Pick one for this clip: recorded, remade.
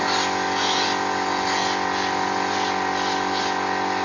recorded